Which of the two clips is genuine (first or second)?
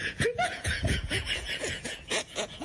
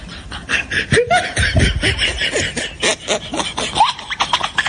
second